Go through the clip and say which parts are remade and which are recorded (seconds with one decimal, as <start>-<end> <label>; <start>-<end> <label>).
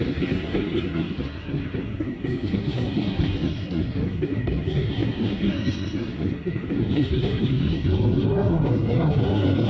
0.0-9.7 remade